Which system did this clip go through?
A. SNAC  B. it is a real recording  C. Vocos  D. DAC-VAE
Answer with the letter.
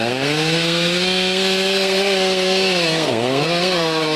A